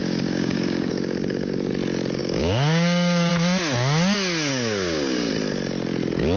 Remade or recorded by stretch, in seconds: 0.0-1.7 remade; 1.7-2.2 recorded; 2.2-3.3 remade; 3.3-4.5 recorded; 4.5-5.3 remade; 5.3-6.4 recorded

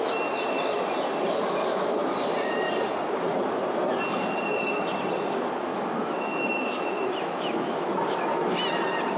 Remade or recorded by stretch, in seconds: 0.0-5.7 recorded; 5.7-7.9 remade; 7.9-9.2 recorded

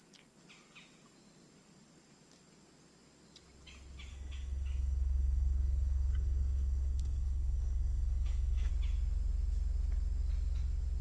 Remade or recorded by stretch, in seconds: 0.0-4.1 recorded; 4.1-8.7 remade; 8.7-11.0 recorded

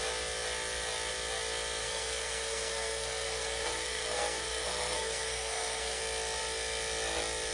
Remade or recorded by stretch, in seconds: 0.0-1.8 recorded; 1.8-6.0 remade; 6.0-7.5 recorded

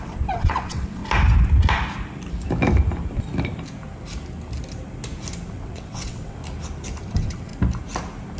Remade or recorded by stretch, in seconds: 0.0-1.0 remade; 1.0-5.5 recorded; 5.5-6.4 remade; 6.4-7.0 recorded; 7.0-7.5 remade; 7.5-8.4 recorded

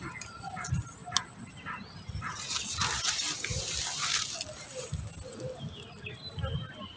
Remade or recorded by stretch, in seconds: 0.0-7.0 recorded